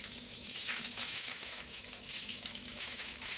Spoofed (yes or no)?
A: yes